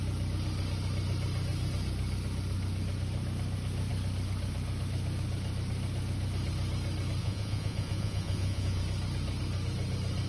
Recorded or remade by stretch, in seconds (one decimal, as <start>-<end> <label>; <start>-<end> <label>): 0.0-7.2 recorded; 7.2-8.8 remade; 8.8-10.3 recorded